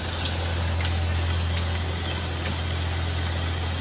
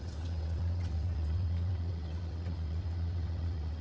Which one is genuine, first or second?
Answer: first